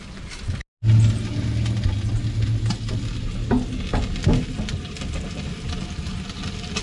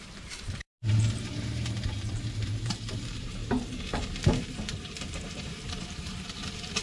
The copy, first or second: second